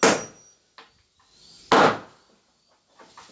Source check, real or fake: real